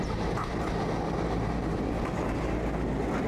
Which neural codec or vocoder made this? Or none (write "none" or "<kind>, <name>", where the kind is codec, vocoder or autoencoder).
none